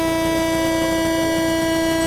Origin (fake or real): real